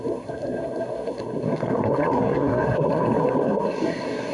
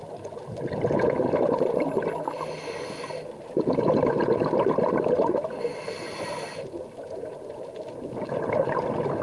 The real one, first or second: second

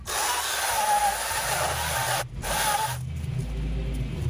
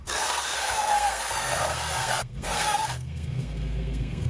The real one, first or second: first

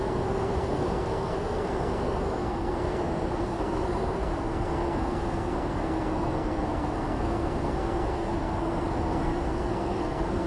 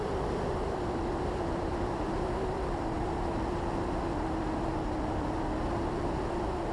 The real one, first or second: second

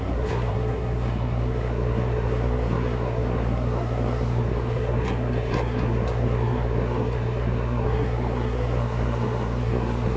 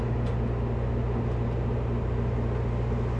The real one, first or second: second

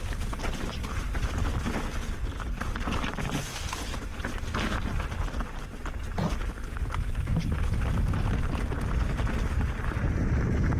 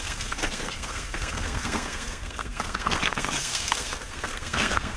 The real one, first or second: first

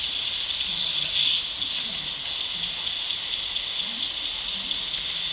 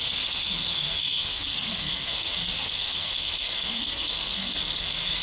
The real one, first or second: first